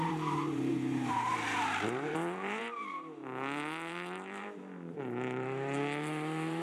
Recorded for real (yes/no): no